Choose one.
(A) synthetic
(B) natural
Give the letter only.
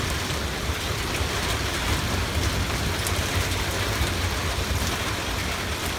B